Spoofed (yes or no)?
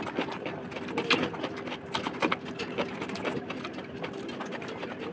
no